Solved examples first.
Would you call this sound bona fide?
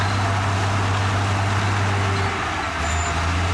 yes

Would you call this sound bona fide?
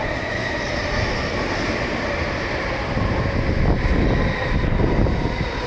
yes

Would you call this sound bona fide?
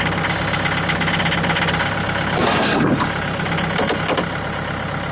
yes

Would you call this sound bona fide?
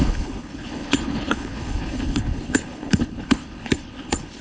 no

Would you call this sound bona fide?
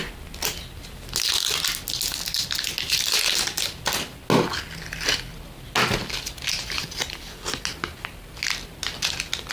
yes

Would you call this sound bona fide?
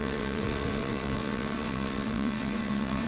no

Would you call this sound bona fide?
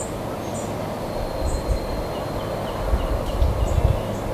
yes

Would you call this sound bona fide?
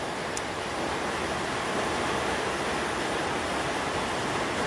yes